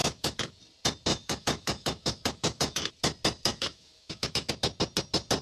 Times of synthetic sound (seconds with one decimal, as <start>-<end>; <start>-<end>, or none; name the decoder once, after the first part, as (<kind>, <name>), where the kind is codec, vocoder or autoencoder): 0.0-0.6 (autoencoder, DAC-VAE); 1.1-2.9; 3.5-4.5